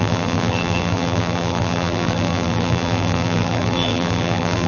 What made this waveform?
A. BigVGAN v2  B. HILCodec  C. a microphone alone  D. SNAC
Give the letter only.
A